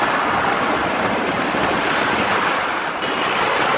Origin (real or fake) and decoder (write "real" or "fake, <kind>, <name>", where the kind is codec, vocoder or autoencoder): real